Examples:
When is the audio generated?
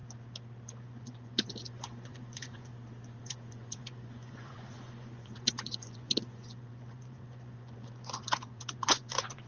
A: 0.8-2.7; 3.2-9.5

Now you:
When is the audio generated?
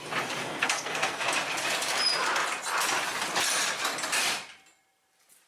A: 0.4-1.3